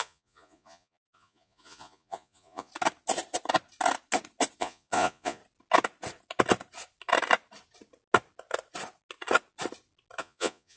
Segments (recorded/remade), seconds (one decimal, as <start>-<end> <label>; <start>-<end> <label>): 0.0-2.7 remade; 2.7-4.6 recorded; 4.6-5.4 remade; 5.4-10.2 recorded; 10.2-10.8 remade